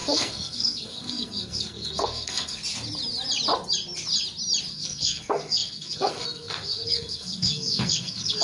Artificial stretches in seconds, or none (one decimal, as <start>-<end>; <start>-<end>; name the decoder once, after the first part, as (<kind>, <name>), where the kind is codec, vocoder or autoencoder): 0.0-2.6 (codec, SNAC); 4.7-8.4